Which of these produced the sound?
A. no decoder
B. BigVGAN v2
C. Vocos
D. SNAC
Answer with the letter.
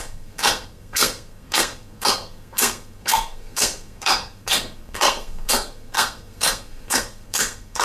D